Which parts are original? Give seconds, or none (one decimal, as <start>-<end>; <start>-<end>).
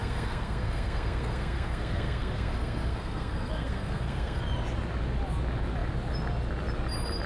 4.4-7.3